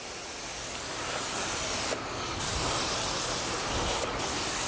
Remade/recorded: recorded